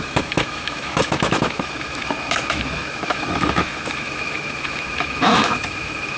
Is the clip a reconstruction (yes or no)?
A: yes